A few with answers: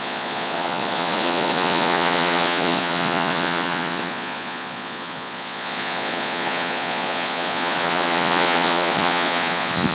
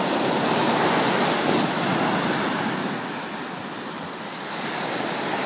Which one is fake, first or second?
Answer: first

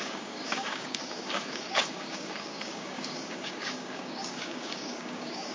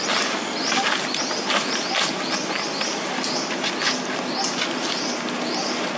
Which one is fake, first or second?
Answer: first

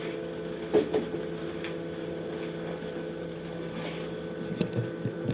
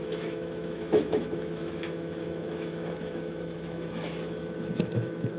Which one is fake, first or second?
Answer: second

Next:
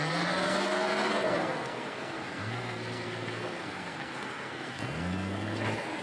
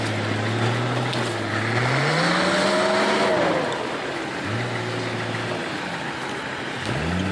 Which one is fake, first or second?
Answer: first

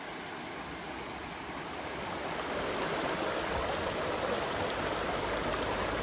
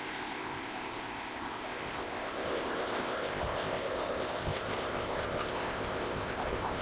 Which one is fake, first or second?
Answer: second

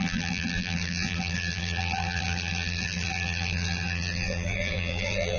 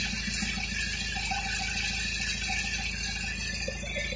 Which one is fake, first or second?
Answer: first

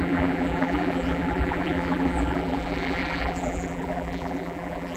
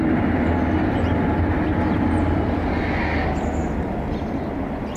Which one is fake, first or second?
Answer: first